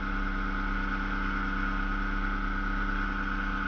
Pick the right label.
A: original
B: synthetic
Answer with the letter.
A